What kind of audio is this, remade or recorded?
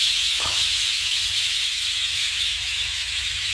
remade